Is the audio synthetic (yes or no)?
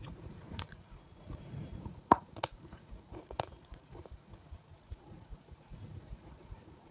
yes